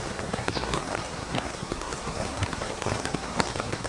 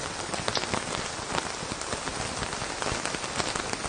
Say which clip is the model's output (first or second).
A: first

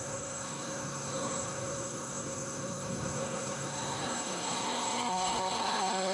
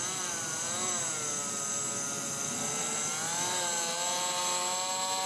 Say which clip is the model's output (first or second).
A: first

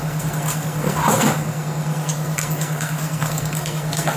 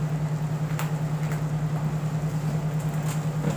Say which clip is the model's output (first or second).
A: first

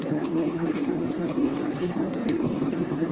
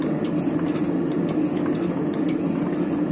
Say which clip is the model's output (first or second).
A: first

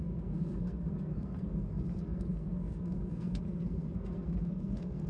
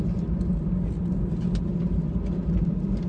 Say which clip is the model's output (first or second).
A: first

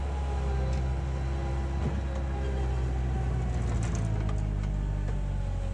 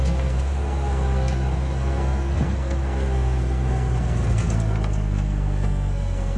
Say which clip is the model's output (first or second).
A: second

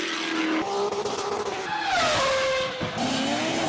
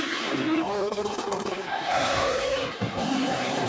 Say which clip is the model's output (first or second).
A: second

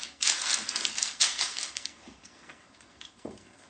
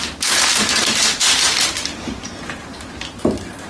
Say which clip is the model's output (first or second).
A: first